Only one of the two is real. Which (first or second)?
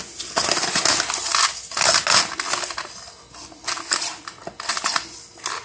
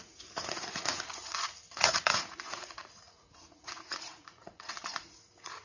first